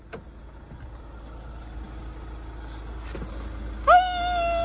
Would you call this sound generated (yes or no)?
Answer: no